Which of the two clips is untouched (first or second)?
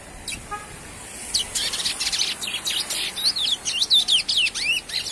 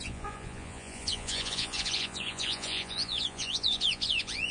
first